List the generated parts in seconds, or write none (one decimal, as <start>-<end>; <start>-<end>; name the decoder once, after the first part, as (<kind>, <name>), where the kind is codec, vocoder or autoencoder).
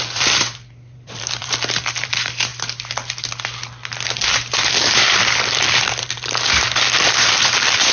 0.0-2.5 (vocoder, BigVGAN v2); 4.7-7.9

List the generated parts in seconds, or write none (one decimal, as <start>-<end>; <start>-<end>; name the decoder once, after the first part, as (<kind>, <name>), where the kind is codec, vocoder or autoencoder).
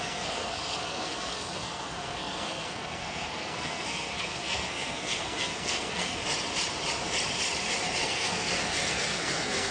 0.0-6.2 (codec, SNAC); 8.0-9.7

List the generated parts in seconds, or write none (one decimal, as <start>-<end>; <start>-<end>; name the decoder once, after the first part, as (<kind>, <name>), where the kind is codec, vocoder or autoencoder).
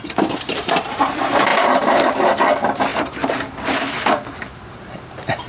0.0-5.5 (vocoder, BigVGAN v2)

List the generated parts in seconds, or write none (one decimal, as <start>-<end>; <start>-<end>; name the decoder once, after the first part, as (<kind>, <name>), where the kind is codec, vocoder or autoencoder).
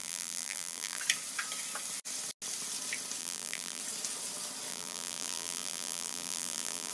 0.0-1.0 (vocoder, BigVGAN v2); 3.2-3.8; 4.7-6.9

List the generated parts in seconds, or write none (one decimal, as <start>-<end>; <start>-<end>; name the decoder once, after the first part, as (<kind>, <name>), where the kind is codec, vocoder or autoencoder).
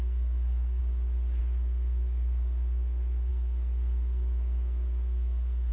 0.0-0.8 (codec, SNAC); 1.4-5.7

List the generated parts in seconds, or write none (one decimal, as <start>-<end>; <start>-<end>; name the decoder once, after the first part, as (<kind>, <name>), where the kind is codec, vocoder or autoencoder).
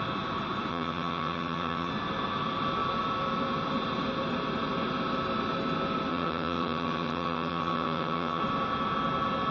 0.7-1.9 (vocoder, HiFi-GAN); 6.1-8.4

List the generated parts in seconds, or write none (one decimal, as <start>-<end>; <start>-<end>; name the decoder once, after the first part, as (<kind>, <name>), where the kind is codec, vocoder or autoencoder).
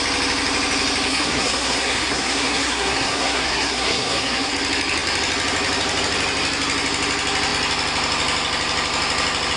1.1-4.5 (codec, SNAC)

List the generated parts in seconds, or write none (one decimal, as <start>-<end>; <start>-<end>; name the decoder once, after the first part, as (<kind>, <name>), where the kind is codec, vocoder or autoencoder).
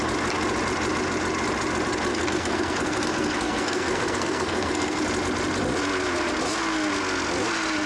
2.1-5.0 (codec, SNAC)